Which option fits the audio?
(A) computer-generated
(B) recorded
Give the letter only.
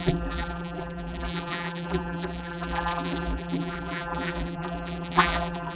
A